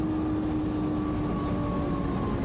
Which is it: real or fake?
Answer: real